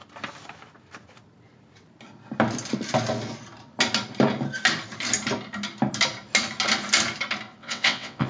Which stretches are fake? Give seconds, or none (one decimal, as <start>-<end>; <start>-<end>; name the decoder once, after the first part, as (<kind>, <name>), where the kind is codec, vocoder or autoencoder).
7.6-8.3 (vocoder, WaveNeXt)